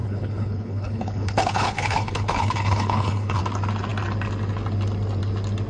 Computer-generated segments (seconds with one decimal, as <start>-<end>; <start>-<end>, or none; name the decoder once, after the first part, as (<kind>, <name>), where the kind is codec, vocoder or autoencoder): 0.0-3.4 (codec, HILCodec)